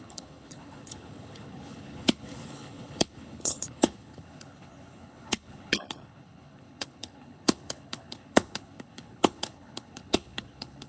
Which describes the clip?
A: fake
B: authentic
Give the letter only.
A